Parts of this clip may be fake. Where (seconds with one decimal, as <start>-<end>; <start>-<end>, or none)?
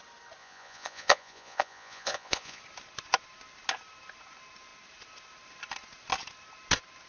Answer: 0.4-2.6